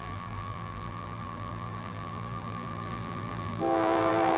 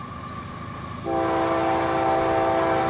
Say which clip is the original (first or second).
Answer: second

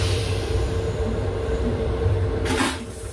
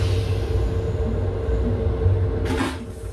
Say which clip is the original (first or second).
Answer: second